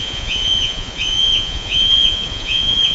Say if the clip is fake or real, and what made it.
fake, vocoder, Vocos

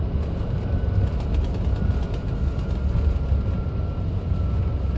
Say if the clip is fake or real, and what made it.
real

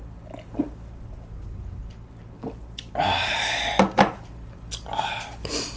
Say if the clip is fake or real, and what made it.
real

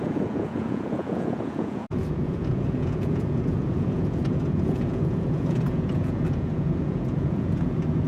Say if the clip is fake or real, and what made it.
fake, vocoder, Vocos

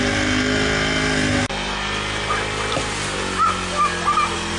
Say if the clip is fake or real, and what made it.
real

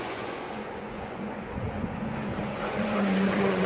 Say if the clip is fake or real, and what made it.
fake, vocoder, Vocos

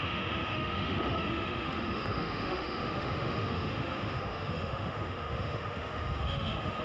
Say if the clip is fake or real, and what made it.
fake, autoencoder, DAC-VAE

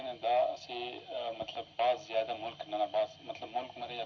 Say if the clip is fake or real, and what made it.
real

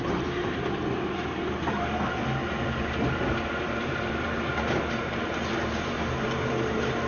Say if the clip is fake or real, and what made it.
fake, vocoder, BigVGAN v2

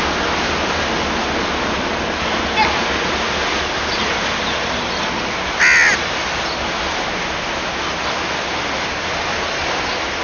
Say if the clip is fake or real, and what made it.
real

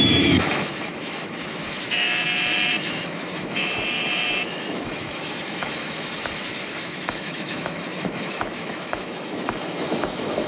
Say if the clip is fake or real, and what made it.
fake, autoencoder, DAC-VAE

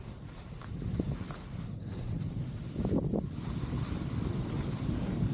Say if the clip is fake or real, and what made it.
real